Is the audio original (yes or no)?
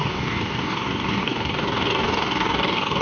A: no